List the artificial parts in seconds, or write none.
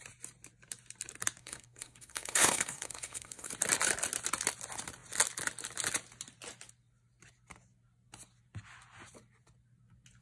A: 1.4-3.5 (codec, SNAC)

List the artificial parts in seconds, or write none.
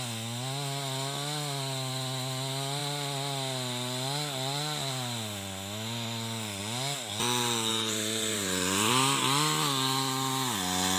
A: 7.7-8.9 (vocoder, BigVGAN v2)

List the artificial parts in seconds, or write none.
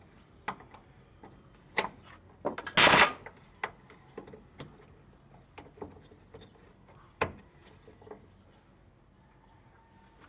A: none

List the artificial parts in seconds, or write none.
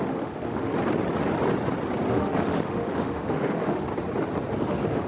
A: 0.0-0.7 (autoencoder, DAC-VAE); 2.1-3.9; 4.6-5.1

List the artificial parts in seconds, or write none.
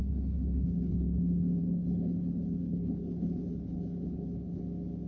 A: 0.0-1.2 (codec, HILCodec); 1.6-4.6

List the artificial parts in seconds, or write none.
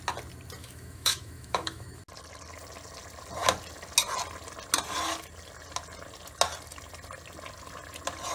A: 0.6-2.0 (autoencoder, DAC-VAE)